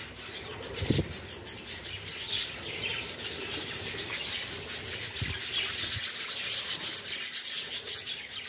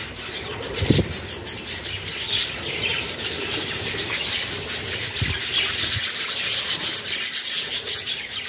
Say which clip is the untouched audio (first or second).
first